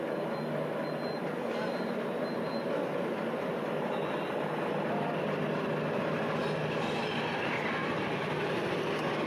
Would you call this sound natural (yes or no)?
yes